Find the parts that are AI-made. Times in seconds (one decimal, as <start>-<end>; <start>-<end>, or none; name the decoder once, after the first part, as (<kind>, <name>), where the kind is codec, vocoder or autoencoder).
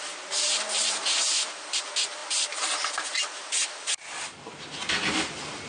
none